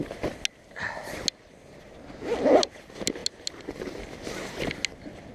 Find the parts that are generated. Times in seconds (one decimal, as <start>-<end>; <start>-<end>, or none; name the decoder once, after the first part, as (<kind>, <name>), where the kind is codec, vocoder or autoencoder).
none